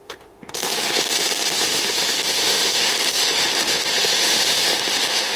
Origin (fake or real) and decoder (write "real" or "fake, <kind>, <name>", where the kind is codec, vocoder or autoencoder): fake, autoencoder, DAC-VAE